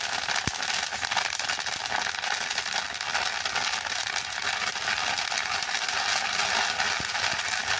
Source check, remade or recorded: recorded